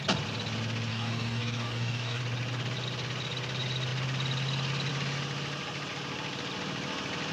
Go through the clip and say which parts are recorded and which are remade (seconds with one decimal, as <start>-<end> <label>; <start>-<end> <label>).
0.0-0.9 recorded; 0.9-2.2 remade; 2.2-7.3 recorded